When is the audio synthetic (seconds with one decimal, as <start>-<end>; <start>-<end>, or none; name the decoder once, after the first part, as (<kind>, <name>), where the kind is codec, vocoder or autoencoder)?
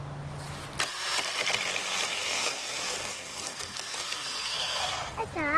2.1-5.0 (codec, SNAC)